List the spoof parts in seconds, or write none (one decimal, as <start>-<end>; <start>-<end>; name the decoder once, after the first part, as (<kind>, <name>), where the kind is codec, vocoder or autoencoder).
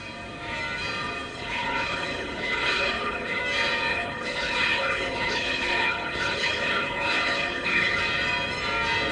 1.3-3.4 (codec, HILCodec); 3.9-8.0